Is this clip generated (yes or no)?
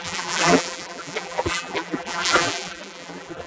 yes